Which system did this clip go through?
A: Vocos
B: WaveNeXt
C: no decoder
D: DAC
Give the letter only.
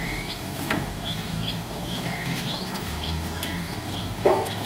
D